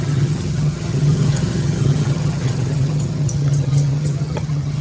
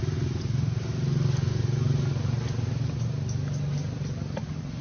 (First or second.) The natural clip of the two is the second